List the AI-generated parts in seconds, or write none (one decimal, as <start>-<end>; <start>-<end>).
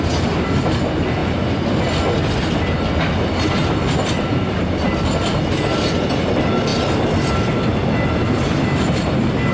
none